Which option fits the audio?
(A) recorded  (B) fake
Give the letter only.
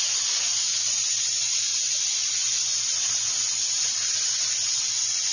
A